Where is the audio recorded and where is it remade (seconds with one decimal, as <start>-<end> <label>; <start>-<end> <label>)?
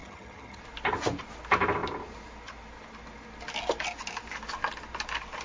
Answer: 0.0-0.6 remade; 0.6-5.4 recorded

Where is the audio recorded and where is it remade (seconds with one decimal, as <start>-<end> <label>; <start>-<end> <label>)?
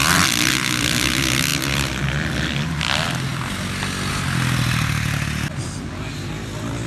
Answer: 0.0-6.9 recorded